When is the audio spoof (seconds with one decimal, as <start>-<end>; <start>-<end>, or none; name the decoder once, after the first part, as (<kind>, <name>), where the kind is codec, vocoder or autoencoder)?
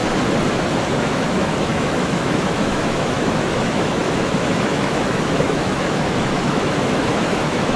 0.8-7.8 (autoencoder, DAC-VAE)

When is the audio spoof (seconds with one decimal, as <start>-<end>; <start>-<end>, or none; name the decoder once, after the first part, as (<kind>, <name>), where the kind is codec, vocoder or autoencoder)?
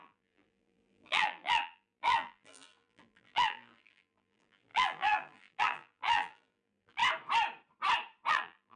0.0-7.0 (vocoder, BigVGAN v2); 8.3-8.8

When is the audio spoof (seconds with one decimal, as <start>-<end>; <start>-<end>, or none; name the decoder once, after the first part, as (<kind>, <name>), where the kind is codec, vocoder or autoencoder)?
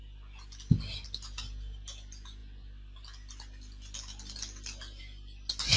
none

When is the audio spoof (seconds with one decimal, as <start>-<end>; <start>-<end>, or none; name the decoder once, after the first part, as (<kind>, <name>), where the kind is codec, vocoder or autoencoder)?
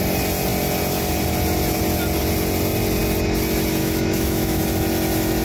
3.8-4.6 (autoencoder, DAC-VAE)